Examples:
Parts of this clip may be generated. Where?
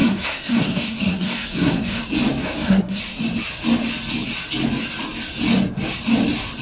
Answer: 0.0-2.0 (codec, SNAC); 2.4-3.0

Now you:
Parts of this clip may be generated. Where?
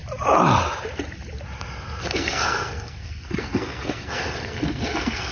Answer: 2.0-5.3 (codec, SNAC)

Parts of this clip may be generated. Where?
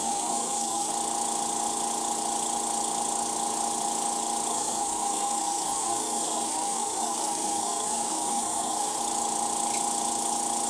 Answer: 0.0-0.9 (codec, SNAC); 4.5-9.0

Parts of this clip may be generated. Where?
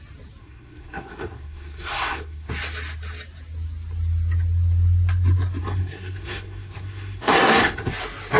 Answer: 0.4-2.5 (codec, SNAC); 5.6-7.9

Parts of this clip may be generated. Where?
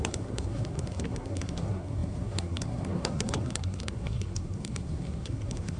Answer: 0.0-5.8 (codec, SNAC)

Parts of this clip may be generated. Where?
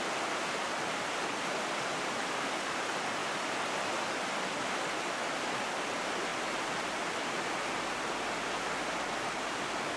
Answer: none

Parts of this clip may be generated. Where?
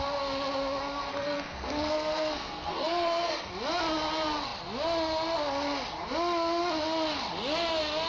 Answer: 1.1-3.5 (codec, SNAC)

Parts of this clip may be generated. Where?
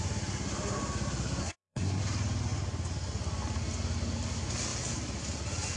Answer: 1.4-2.0 (codec, SNAC)